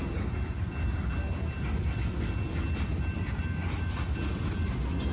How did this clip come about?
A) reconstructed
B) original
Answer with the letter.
B